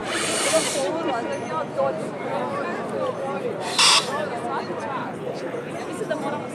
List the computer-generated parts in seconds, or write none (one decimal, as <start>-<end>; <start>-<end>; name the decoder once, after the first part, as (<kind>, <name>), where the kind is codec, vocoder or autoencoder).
5.0-5.7 (codec, HILCodec)